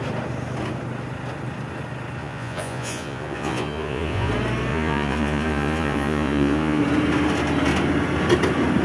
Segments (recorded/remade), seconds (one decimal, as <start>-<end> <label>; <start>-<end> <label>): 0.0-2.2 recorded; 2.2-4.3 remade; 4.3-4.7 recorded; 4.7-6.8 remade; 6.8-8.8 recorded